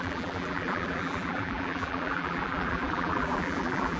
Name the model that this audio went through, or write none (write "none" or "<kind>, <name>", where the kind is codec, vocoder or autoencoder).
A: vocoder, BigVGAN v2